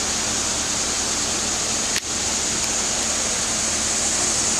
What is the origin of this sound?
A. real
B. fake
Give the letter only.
A